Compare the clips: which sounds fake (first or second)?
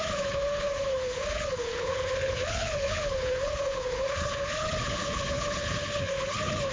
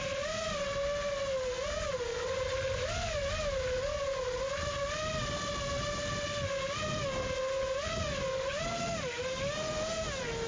first